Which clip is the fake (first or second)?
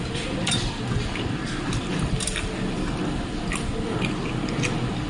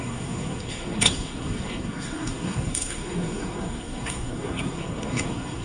second